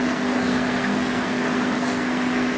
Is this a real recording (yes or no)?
no